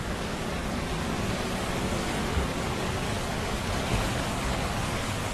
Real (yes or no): no